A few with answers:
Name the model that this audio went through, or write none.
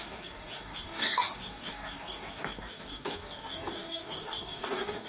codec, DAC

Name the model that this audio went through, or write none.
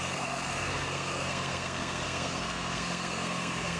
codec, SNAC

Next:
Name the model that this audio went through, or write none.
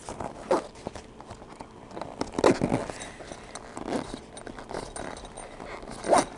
none